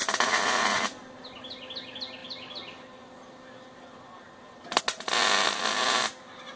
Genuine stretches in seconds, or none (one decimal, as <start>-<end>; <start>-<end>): 0.0-2.2; 4.8-6.6